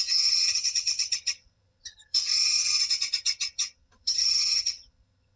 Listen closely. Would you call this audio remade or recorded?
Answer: remade